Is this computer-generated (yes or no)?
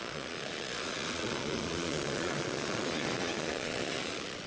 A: yes